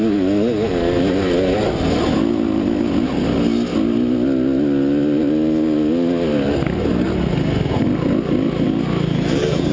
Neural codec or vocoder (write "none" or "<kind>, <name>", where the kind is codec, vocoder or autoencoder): none